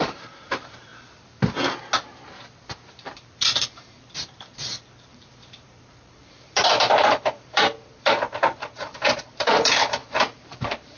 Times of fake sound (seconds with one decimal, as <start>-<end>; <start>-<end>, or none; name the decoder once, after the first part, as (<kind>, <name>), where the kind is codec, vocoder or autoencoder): 0.0-0.9 (vocoder, BigVGAN v2); 2.9-11.0